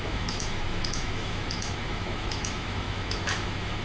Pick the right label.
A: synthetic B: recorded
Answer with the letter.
A